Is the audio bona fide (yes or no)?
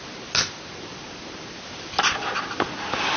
yes